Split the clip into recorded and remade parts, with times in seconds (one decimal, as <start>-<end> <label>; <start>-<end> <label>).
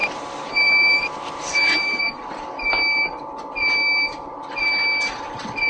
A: 0.0-2.7 remade; 2.7-5.7 recorded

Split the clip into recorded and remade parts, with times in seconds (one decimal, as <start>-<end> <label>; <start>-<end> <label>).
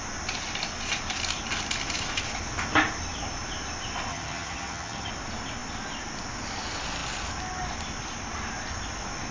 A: 0.0-4.1 recorded; 4.1-5.1 remade; 5.1-9.3 recorded